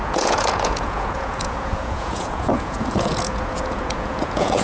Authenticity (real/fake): fake